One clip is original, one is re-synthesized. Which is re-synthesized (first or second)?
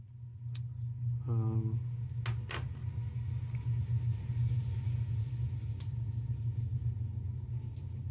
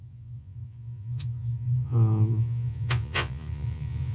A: second